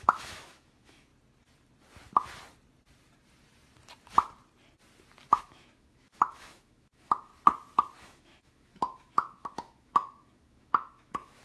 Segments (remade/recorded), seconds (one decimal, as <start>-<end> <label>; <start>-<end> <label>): 0.0-1.1 remade; 1.1-5.4 recorded; 5.4-7.3 remade; 7.3-8.0 recorded; 8.0-11.4 remade